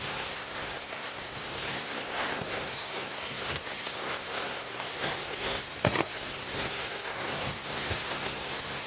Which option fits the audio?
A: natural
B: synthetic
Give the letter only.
B